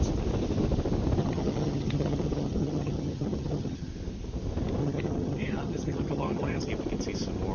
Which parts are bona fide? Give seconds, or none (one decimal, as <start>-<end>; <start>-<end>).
0.0-1.2; 3.9-4.8; 6.7-7.5